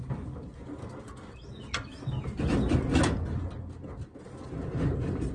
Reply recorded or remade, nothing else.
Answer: recorded